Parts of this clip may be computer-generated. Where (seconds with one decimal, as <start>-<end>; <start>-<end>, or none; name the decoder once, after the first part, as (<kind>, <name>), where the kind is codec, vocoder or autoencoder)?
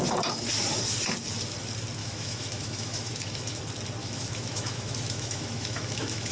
2.0-3.6 (autoencoder, DAC-VAE); 4.0-6.3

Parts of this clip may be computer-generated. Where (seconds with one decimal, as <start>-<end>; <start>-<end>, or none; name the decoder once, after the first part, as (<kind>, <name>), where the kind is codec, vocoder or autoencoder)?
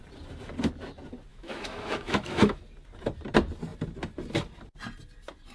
1.3-2.6 (autoencoder, DAC-VAE)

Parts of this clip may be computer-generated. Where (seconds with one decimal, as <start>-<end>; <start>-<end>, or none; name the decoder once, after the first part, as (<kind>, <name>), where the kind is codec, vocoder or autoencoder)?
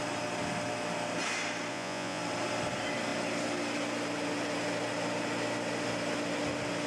1.7-2.2 (vocoder, Vocos)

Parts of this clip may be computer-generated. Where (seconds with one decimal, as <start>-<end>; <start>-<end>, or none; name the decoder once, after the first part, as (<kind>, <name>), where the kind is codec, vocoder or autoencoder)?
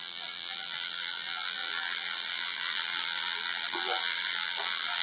0.0-5.0 (vocoder, BigVGAN v2)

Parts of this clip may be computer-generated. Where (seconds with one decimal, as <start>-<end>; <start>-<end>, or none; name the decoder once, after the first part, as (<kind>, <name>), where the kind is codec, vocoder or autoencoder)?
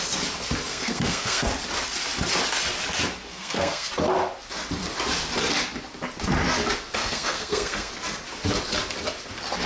0.7-1.5 (codec, SNAC); 3.3-3.9; 7.0-7.9